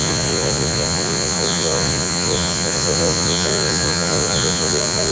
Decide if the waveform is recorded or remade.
remade